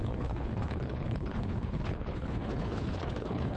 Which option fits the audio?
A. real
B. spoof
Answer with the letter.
B